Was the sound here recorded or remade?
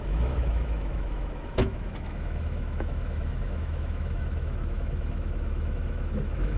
remade